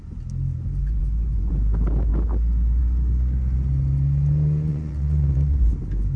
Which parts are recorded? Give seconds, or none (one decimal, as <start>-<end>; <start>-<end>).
0.0-0.8; 1.5-4.7; 5.7-6.2

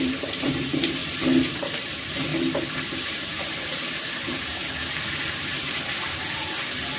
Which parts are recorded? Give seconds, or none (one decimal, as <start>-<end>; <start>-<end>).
1.0-1.5; 2.3-2.8; 4.6-5.2

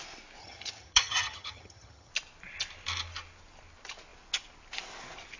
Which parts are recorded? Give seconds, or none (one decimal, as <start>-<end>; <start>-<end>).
0.0-0.4; 2.1-5.4

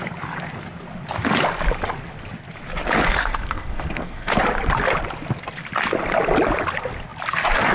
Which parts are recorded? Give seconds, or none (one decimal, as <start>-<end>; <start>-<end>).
0.0-3.2; 4.4-7.7